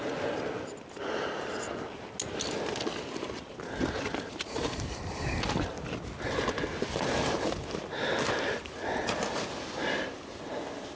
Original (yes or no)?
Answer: yes